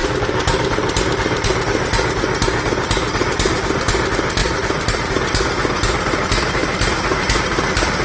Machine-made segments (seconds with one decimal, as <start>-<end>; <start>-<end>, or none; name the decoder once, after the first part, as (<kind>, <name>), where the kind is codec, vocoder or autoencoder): 0.0-1.0 (vocoder, BigVGAN v2); 4.4-5.1